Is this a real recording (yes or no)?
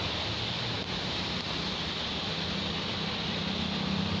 yes